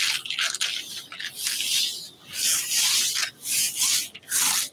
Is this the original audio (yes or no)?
yes